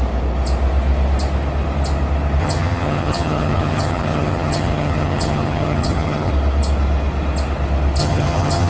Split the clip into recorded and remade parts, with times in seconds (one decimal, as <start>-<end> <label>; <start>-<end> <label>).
0.0-2.4 recorded; 2.4-6.3 remade; 6.3-8.0 recorded; 8.0-8.7 remade